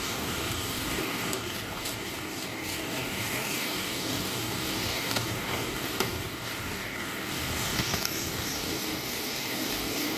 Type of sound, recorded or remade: remade